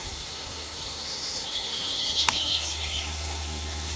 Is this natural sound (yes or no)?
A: no